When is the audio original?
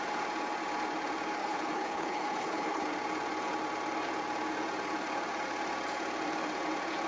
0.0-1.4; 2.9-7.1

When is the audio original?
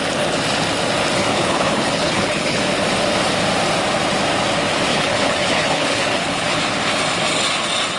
0.0-1.3; 2.6-4.9; 6.6-8.0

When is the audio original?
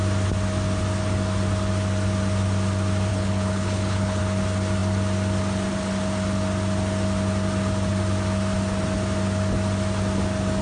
0.0-3.1; 4.2-10.6